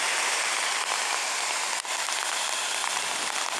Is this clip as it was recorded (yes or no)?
no